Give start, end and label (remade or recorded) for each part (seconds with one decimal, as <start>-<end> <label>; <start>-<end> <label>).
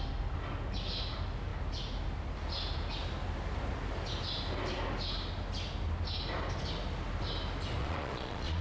0.0-7.8 recorded; 7.8-8.6 remade